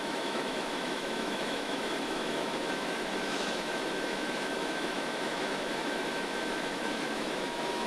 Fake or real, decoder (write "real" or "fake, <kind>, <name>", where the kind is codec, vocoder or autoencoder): fake, autoencoder, DAC-VAE